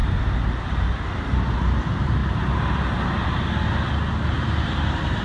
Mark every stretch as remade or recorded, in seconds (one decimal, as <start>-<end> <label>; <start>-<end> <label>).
0.0-1.8 recorded; 1.8-2.2 remade; 2.2-4.6 recorded; 4.6-5.2 remade